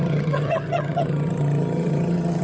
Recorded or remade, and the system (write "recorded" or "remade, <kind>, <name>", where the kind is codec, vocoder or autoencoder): remade, vocoder, HiFi-GAN